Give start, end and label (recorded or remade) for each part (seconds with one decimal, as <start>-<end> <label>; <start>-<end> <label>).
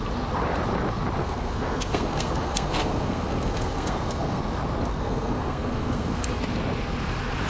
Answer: 0.0-1.2 recorded; 1.2-4.4 remade; 4.4-4.9 recorded; 4.9-6.4 remade; 6.4-7.5 recorded